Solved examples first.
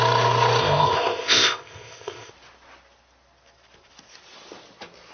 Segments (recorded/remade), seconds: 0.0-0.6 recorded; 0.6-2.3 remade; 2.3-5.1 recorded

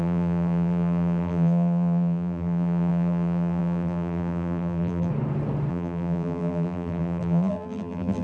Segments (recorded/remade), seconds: 0.0-5.1 remade; 5.1-5.7 recorded; 5.7-8.2 remade

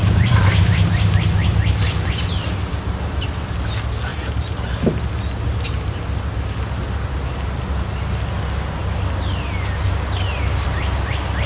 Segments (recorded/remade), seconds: 0.0-0.7 remade; 0.7-4.1 recorded; 4.1-5.1 remade; 5.1-11.5 recorded

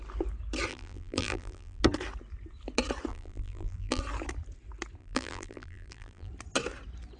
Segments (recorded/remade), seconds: 0.0-0.7 recorded; 0.7-1.8 remade; 1.8-3.1 recorded; 3.1-4.0 remade; 4.0-5.0 recorded; 5.0-6.3 remade; 6.3-7.2 recorded

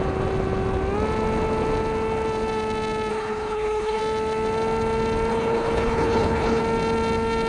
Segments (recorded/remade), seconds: 0.0-3.1 recorded; 3.1-4.0 remade; 4.0-5.3 recorded; 5.3-6.6 remade; 6.6-7.5 recorded

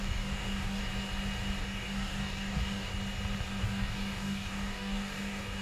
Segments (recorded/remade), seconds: 0.0-0.8 remade; 0.8-1.6 recorded; 1.6-2.9 remade; 2.9-3.6 recorded; 3.6-5.6 remade